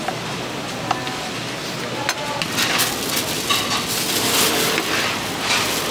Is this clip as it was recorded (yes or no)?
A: yes